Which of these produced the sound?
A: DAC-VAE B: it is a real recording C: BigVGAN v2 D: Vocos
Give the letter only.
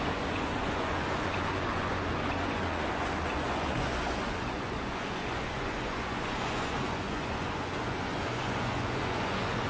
D